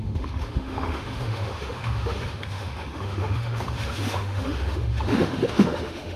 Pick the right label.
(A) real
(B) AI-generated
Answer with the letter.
B